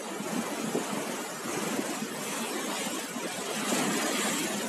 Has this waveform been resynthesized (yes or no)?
no